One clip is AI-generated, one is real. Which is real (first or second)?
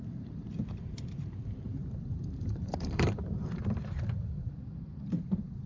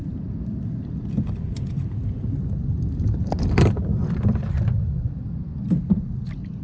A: second